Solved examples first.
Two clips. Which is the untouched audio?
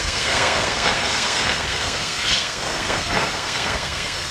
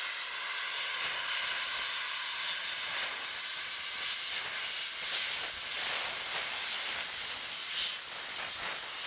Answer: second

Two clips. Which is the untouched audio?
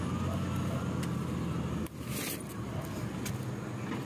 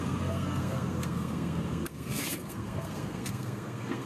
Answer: first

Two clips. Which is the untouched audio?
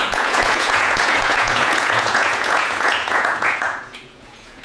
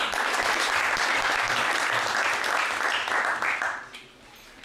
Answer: second